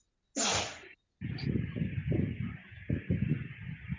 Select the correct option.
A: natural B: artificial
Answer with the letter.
A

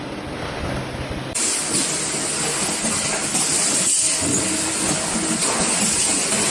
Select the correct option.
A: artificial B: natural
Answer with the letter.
B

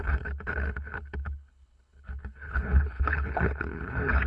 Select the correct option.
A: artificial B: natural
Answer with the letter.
A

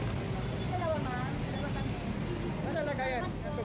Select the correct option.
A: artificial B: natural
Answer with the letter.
B